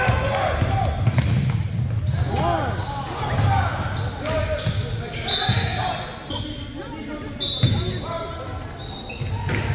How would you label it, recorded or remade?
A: recorded